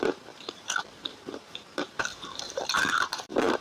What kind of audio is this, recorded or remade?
remade